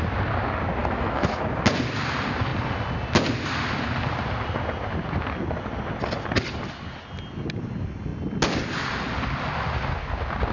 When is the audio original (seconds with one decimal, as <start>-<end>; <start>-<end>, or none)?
0.0-0.8; 1.4-10.5